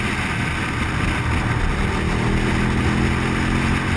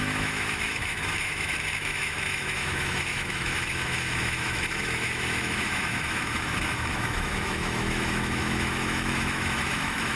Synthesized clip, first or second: second